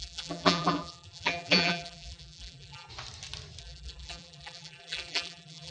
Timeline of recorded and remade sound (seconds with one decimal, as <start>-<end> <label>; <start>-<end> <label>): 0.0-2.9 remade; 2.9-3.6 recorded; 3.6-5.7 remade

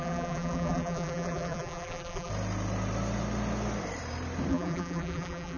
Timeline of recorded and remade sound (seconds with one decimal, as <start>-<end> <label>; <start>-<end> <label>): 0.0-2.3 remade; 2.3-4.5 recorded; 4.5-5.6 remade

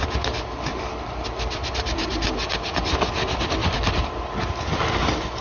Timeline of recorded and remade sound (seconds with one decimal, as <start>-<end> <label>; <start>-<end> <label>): 0.0-3.6 recorded; 3.6-4.7 remade; 4.7-5.4 recorded

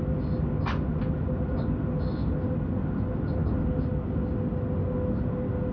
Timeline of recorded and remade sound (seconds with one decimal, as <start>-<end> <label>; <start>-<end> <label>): 0.0-5.7 recorded

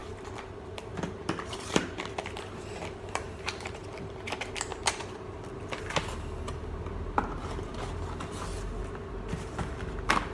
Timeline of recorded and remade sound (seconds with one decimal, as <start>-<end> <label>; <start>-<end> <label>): 0.0-4.2 remade; 4.2-10.3 recorded

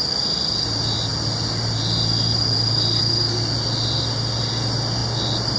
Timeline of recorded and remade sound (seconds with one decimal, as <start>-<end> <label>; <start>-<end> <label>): 0.0-1.1 recorded; 1.1-3.0 remade; 3.0-5.6 recorded

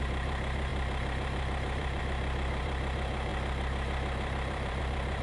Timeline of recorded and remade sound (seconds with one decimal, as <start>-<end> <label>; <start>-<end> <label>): 0.0-5.2 remade